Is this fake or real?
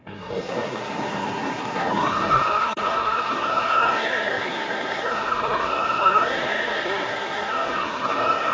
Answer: fake